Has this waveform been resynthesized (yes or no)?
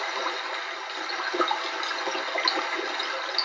no